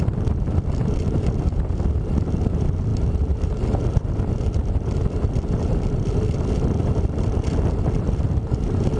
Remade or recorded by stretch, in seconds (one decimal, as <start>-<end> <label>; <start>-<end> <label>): 0.0-9.0 recorded